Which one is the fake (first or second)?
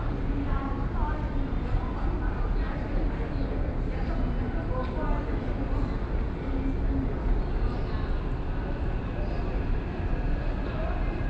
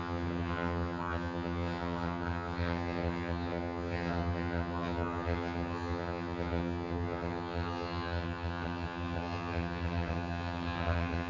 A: second